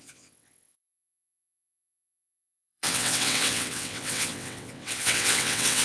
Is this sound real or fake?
fake